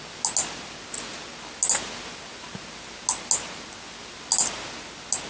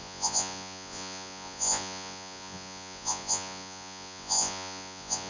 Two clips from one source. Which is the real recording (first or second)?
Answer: first